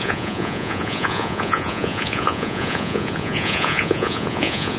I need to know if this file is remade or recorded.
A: remade